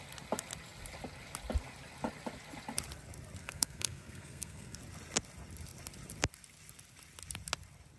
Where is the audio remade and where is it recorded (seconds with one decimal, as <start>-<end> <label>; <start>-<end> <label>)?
0.0-3.4 recorded; 3.4-4.8 remade; 4.8-8.0 recorded